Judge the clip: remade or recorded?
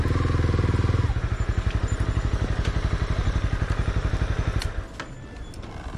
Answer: recorded